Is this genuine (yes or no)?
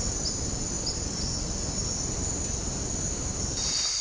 yes